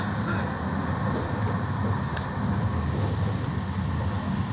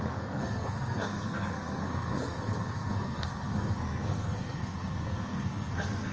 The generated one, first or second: second